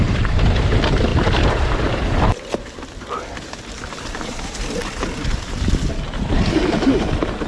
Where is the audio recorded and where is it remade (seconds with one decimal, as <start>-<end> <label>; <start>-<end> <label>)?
0.0-7.5 remade

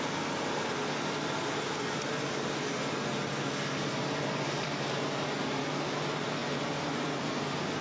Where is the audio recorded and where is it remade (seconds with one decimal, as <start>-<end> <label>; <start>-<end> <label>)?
0.0-6.4 recorded; 6.4-6.9 remade; 6.9-7.8 recorded

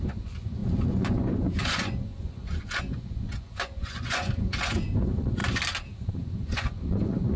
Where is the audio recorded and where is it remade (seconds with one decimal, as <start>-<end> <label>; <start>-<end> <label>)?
0.0-5.4 remade; 5.4-6.1 recorded; 6.1-7.4 remade

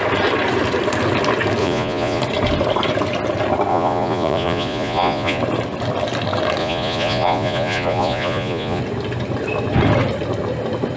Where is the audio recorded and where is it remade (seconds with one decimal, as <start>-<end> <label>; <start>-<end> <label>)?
0.0-1.6 recorded; 1.6-2.2 remade; 2.2-3.7 recorded; 3.7-5.4 remade; 5.4-6.6 recorded; 6.6-8.8 remade; 8.8-11.0 recorded

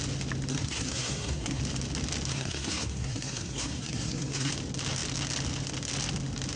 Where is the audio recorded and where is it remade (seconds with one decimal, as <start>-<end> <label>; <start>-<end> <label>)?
0.0-0.5 recorded; 0.5-1.6 remade; 1.6-2.3 recorded; 2.3-4.5 remade; 4.5-6.6 recorded

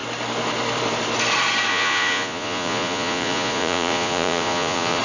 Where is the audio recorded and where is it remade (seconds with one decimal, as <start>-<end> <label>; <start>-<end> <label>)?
0.0-1.7 recorded; 1.7-5.0 remade

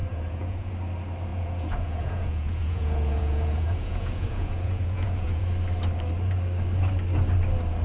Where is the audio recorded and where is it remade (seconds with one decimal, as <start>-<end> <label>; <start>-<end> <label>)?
0.0-0.7 remade; 0.7-1.3 recorded; 1.3-5.4 remade; 5.4-7.8 recorded